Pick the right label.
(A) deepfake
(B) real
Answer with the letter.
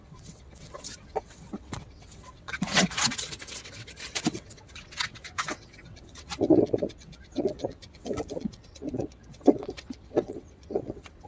A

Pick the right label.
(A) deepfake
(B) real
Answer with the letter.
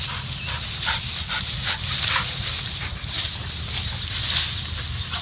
B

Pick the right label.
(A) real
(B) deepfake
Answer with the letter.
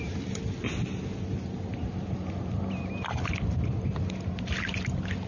A